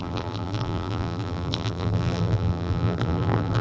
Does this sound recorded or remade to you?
remade